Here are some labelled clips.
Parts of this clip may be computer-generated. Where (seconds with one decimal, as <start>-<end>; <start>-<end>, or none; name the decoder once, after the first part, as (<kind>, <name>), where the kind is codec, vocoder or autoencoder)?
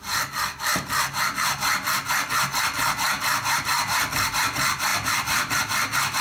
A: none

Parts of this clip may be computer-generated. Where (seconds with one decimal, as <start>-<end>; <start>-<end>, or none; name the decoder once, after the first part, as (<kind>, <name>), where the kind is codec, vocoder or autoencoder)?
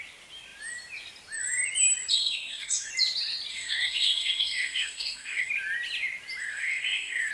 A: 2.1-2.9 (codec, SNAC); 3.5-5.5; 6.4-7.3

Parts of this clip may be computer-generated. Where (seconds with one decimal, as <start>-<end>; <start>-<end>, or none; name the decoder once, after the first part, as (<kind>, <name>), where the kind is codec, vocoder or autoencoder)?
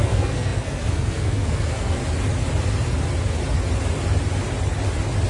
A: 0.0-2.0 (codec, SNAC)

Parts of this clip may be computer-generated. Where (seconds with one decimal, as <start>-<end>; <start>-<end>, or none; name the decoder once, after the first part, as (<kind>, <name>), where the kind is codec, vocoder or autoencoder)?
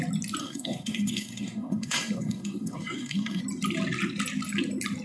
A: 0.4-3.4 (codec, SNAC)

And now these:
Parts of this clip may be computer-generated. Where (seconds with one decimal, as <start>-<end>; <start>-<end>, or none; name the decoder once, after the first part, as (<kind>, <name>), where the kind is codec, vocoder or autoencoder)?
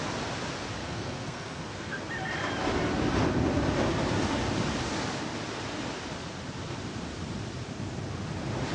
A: 0.8-2.1 (codec, SNAC)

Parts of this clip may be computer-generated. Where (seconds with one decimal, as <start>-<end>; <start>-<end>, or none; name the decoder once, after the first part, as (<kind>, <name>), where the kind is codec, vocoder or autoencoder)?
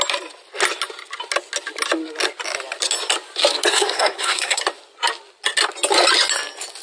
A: 3.7-4.6 (codec, SNAC)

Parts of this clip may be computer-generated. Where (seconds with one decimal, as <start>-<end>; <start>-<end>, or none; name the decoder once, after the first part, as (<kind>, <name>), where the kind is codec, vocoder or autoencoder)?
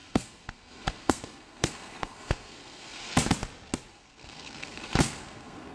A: 0.0-3.1 (codec, SNAC); 3.9-5.7